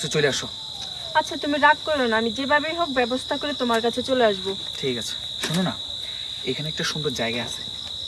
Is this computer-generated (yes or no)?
no